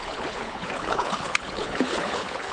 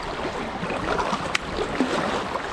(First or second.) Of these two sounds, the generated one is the first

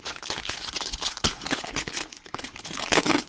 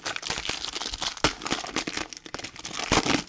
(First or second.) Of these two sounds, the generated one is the first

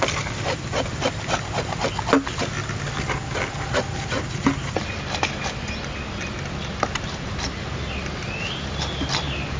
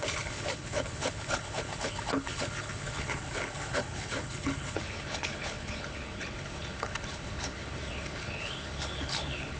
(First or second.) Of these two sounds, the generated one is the second